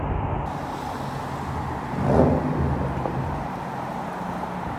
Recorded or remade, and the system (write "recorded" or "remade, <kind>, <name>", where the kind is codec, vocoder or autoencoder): recorded